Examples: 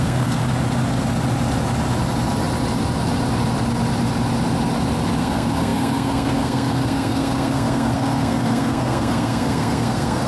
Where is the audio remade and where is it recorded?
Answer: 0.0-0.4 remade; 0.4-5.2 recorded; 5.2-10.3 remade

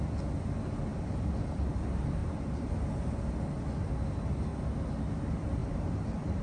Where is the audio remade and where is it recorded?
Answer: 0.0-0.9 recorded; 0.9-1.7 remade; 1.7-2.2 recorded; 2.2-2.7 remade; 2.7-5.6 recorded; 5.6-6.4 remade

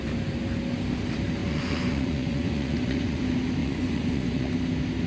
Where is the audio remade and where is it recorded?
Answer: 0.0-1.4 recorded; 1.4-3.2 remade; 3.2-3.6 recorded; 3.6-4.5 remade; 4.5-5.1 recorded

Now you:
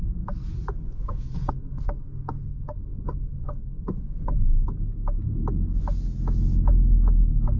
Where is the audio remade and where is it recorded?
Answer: 0.0-0.9 recorded; 0.9-4.8 remade; 4.8-7.6 recorded

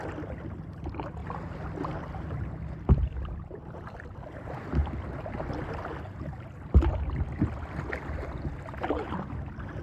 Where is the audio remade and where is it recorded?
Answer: 0.0-9.8 recorded